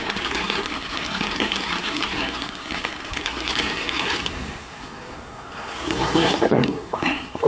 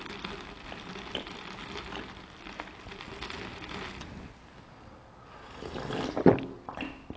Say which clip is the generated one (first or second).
first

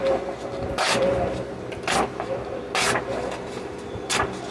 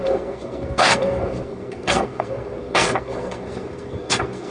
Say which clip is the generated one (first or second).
second